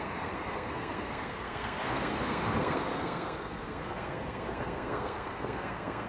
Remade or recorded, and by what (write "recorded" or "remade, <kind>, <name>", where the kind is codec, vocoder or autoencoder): remade, codec, SNAC